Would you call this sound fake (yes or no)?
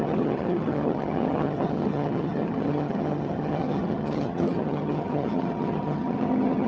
yes